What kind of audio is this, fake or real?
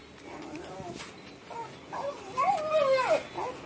real